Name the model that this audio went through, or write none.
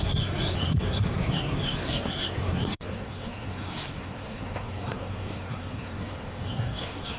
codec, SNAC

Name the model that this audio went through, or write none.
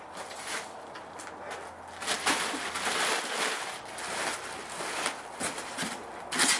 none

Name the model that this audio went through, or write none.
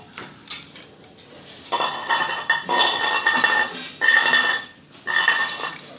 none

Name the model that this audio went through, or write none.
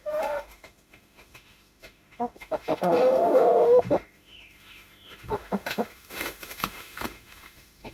autoencoder, DAC-VAE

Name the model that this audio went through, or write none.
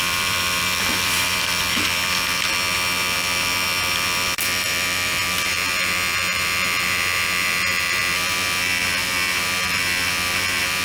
vocoder, BigVGAN v2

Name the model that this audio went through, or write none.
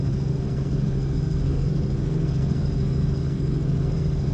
codec, SNAC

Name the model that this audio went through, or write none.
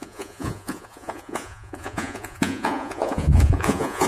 vocoder, Vocos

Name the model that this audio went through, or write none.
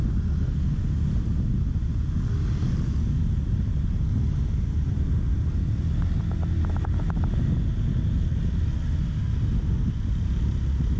none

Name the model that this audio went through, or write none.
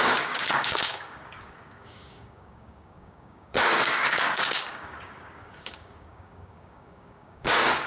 codec, DAC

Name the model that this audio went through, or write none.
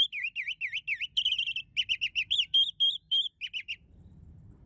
none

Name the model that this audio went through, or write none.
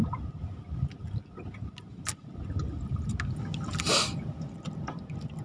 none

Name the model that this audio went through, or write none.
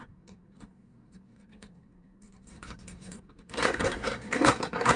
codec, SNAC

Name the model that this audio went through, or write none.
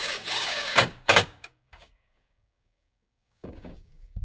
codec, DAC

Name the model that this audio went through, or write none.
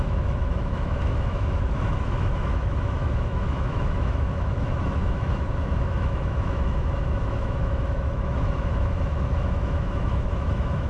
autoencoder, DAC-VAE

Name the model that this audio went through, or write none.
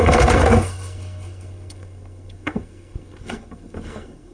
codec, SNAC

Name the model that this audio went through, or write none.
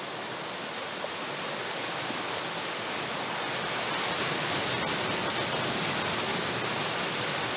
none